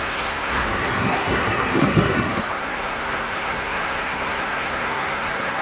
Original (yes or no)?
no